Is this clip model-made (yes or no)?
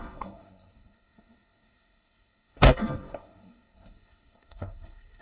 yes